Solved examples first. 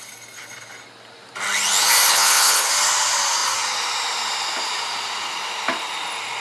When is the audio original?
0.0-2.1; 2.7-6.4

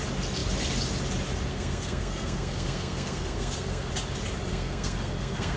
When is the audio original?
0.0-1.5; 3.9-4.5

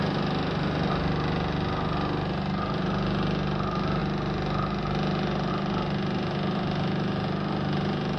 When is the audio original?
0.0-8.2

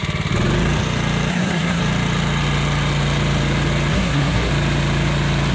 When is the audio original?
0.0-1.3; 1.8-3.9; 4.5-5.5

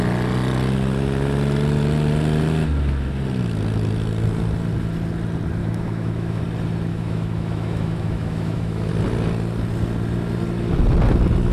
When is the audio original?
0.0-5.6; 6.4-6.9; 8.9-11.5

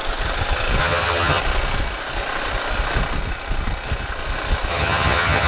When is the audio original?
0.0-0.8; 1.4-4.7

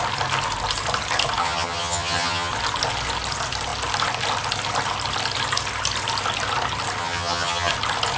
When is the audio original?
0.0-1.4; 2.5-7.0; 7.7-8.2